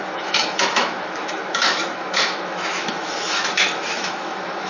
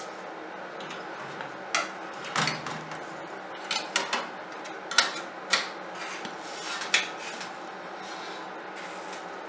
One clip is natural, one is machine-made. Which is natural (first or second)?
second